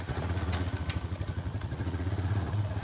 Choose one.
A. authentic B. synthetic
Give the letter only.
B